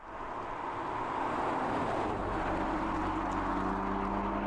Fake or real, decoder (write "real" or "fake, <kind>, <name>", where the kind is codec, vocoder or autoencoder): real